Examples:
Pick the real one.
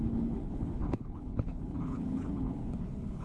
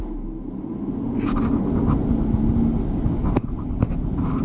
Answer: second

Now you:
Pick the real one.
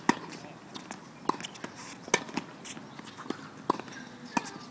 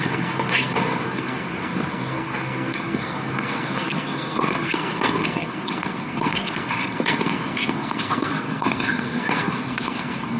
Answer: first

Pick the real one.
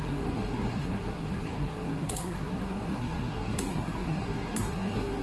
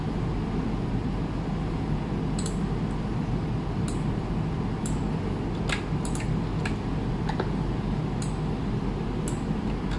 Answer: second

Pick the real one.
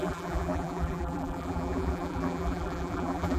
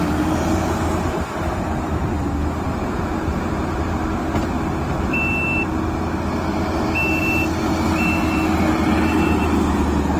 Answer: second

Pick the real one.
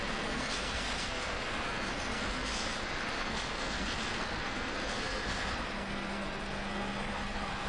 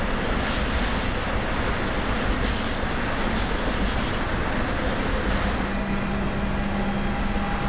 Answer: second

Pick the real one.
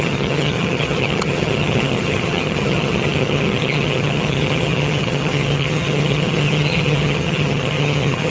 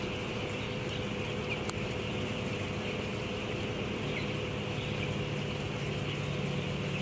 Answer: second